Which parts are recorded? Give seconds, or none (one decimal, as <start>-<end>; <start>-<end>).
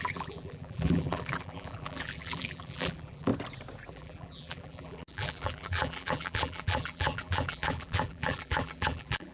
3.3-3.9